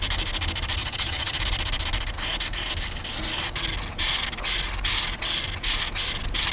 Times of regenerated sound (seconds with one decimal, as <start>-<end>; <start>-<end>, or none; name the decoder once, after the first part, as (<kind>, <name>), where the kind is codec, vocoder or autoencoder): 0.8-1.4 (vocoder, HiFi-GAN)